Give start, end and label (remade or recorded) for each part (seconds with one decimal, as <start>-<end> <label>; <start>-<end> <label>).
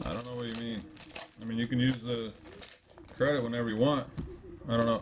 0.0-5.0 recorded